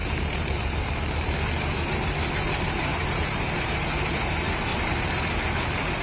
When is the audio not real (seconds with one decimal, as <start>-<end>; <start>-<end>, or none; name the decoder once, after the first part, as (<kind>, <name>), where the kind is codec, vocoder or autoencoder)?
0.0-1.3 (vocoder, BigVGAN v2); 2.9-3.7; 4.7-5.2